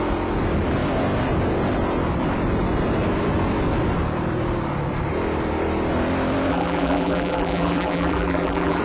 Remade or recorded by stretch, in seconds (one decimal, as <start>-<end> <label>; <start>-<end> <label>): 0.0-6.5 recorded; 6.5-8.8 remade

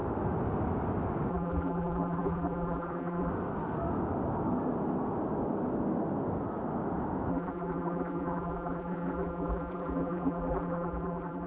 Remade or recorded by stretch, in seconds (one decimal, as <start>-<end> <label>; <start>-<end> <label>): 0.0-1.3 recorded; 1.3-3.3 remade; 3.3-7.3 recorded; 7.3-11.5 remade